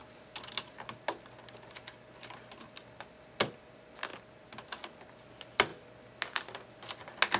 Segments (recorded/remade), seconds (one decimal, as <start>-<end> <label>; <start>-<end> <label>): 0.0-7.4 recorded